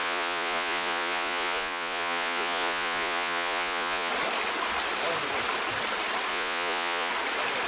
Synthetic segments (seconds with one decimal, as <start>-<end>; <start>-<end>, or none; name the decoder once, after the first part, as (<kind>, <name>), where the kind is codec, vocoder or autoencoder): 0.0-4.1 (vocoder, Vocos); 6.3-7.1